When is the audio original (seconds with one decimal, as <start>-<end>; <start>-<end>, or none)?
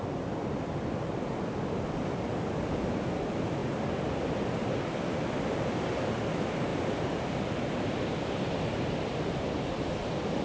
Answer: 0.0-10.4